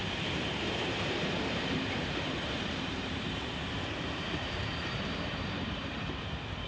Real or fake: fake